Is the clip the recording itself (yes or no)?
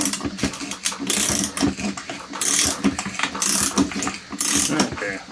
yes